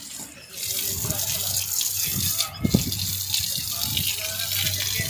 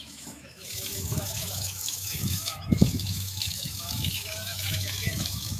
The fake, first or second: second